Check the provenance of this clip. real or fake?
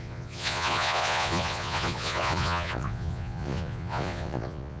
fake